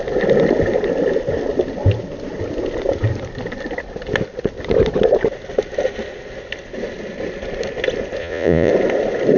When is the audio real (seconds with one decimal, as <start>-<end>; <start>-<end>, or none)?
0.0-8.2; 8.7-9.4